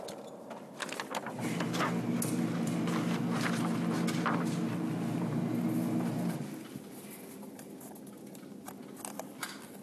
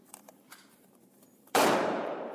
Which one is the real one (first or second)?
first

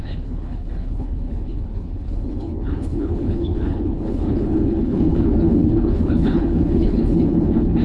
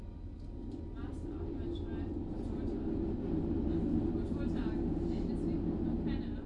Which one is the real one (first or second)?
second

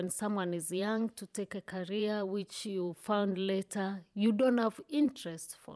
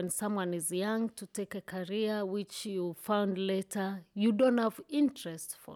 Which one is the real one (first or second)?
second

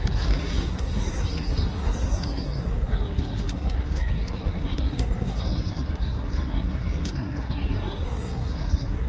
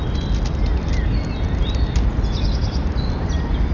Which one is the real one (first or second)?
second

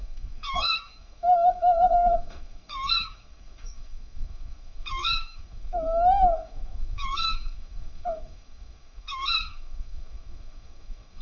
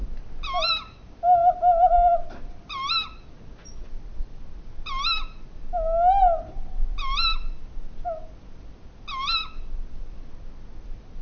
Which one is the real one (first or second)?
second